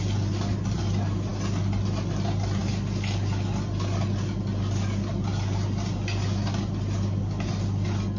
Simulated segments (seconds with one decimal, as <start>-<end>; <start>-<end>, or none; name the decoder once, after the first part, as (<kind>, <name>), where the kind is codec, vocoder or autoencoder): none